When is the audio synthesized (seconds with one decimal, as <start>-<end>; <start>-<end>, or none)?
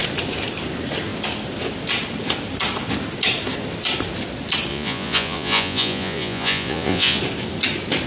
4.7-7.2